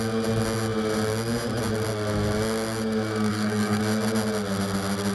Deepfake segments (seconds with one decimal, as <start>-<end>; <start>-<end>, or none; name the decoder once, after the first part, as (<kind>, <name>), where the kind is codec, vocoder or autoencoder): 3.3-3.8 (codec, SNAC)